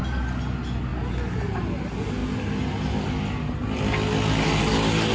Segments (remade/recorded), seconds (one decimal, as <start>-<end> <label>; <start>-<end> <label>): 0.0-5.1 recorded